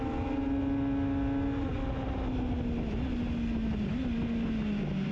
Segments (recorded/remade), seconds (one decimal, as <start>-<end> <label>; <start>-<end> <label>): 0.0-5.1 recorded